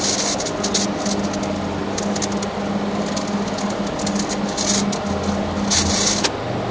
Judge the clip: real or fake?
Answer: real